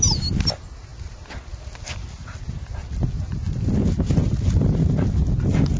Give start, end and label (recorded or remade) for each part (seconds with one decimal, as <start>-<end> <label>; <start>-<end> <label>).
0.0-5.8 recorded